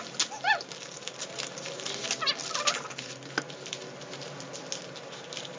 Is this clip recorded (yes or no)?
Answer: yes